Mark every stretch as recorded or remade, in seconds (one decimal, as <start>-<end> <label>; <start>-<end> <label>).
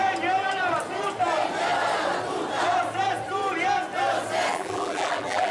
0.0-4.5 recorded; 4.5-5.5 remade